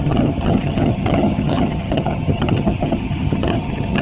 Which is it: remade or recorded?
remade